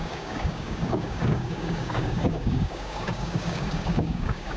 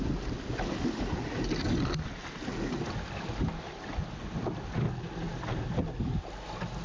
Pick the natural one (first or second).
second